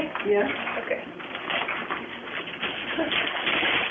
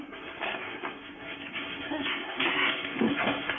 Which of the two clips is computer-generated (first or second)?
second